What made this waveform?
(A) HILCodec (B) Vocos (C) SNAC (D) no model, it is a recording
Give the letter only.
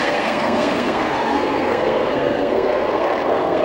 C